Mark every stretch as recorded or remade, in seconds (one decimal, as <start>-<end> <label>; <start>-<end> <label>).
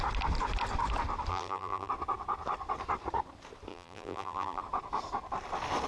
0.0-1.3 recorded; 1.3-1.9 remade; 1.9-3.7 recorded; 3.7-4.6 remade; 4.6-5.9 recorded